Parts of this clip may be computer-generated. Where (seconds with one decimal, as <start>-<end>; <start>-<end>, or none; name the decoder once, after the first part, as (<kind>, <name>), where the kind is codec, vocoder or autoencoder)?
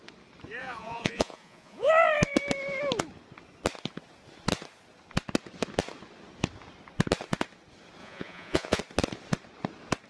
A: 0.6-1.9 (vocoder, Vocos); 8.0-8.8